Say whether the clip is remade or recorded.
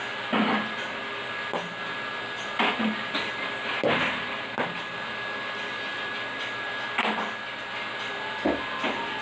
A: recorded